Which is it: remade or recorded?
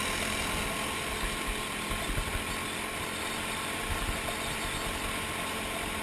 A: recorded